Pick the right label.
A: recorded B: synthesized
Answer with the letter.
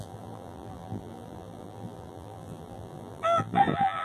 B